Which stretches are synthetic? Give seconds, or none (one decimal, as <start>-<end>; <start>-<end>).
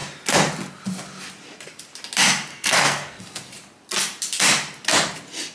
2.5-3.2